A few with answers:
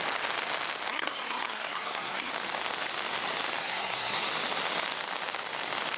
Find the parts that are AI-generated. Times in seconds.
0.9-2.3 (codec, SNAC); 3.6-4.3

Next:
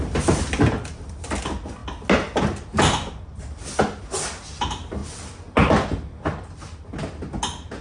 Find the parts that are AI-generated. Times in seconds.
none

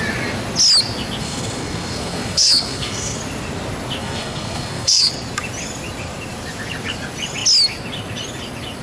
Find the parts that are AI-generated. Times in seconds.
1.2-3.2 (codec, SNAC); 4.0-5.1

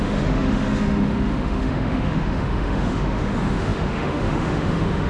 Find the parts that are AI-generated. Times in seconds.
0.0-5.1 (autoencoder, DAC-VAE)